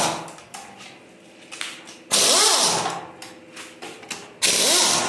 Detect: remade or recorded recorded